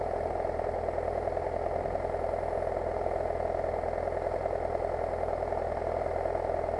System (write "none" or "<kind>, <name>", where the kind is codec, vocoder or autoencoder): none